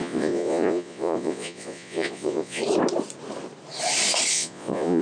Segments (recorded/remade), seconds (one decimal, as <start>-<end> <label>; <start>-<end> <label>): 0.0-2.6 remade; 2.6-4.3 recorded; 4.3-5.0 remade